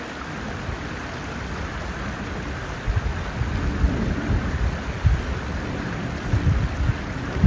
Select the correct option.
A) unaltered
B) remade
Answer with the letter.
A